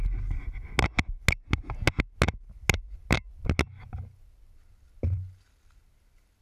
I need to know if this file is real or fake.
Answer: real